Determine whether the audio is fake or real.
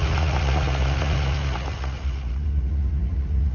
fake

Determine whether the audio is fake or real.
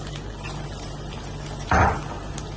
real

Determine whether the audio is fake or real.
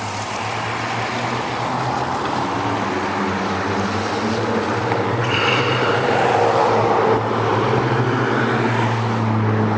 real